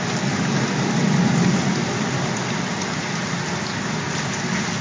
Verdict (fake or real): real